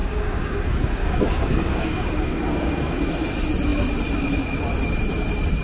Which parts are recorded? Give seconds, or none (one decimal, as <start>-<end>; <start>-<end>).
3.0-5.6